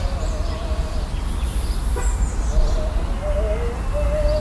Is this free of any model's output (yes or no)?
yes